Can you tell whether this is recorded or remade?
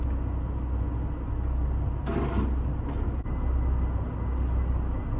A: recorded